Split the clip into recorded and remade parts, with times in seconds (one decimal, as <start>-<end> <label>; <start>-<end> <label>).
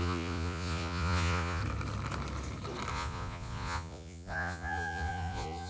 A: 0.0-1.6 remade; 1.6-2.9 recorded; 2.9-5.7 remade